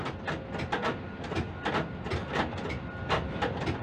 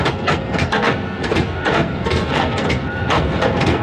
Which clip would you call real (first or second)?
first